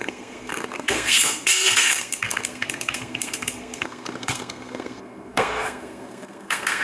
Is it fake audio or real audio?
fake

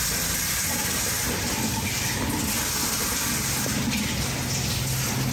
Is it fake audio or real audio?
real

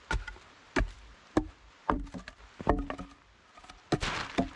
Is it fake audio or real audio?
real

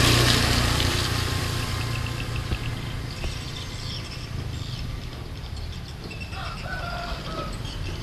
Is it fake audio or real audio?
fake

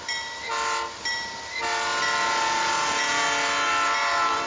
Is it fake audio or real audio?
real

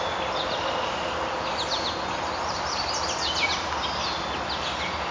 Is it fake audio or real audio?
real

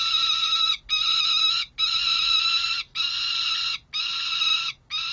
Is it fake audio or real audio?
real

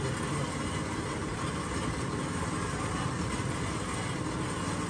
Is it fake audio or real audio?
real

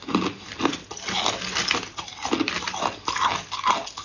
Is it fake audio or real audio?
real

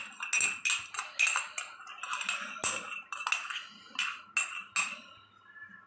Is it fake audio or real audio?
real